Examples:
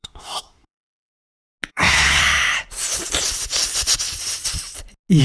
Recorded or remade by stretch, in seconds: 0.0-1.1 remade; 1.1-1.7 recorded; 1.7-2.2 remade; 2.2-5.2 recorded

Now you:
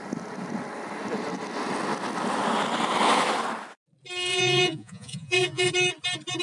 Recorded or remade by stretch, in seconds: 0.0-4.3 recorded; 4.3-5.7 remade; 5.7-6.4 recorded

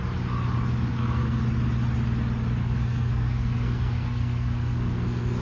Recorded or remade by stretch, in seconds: 0.0-0.9 recorded; 0.9-1.4 remade; 1.4-2.6 recorded; 2.6-5.4 remade

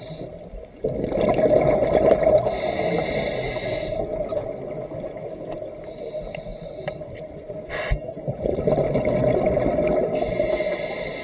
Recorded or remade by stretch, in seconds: 0.0-1.8 recorded; 1.8-2.8 remade; 2.8-6.5 recorded; 6.5-7.5 remade; 7.5-11.2 recorded